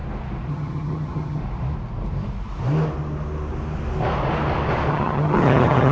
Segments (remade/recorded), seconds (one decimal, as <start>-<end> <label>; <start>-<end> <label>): 0.0-0.5 recorded; 0.5-1.4 remade; 1.4-4.9 recorded; 4.9-5.9 remade